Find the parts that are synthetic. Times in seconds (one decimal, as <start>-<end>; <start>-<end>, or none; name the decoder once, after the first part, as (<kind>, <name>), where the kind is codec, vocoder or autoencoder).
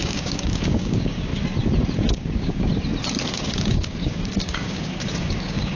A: 0.0-1.3 (codec, DAC); 2.1-2.7; 3.3-5.7